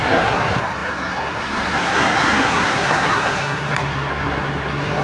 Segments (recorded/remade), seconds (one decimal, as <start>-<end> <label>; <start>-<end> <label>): 0.0-5.0 remade